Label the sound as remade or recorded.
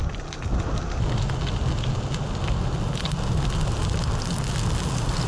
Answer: recorded